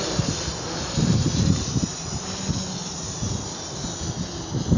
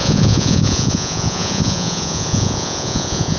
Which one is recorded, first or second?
first